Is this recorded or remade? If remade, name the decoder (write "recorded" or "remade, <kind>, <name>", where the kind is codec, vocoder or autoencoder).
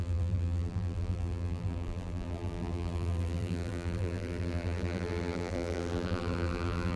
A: remade, vocoder, BigVGAN v2